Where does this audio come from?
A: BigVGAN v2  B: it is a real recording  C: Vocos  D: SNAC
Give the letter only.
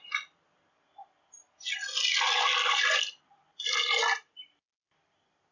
B